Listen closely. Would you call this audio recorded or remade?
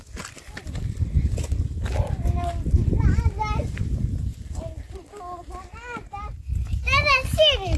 recorded